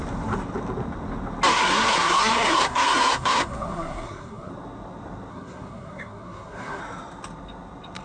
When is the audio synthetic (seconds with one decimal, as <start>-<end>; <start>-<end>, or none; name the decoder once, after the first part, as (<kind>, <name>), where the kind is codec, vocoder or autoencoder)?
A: 1.5-4.5 (codec, SNAC); 5.3-6.8